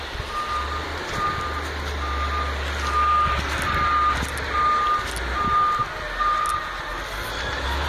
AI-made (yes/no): no